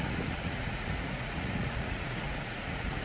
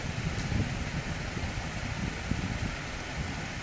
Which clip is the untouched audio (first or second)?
second